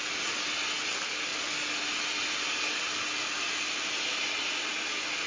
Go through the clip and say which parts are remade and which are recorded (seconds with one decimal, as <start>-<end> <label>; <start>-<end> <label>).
0.0-5.3 recorded